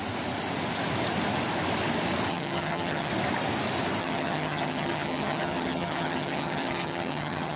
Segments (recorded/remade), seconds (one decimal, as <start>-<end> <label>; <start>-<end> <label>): 0.0-2.3 recorded; 2.3-3.1 remade; 3.1-4.0 recorded; 4.0-7.6 remade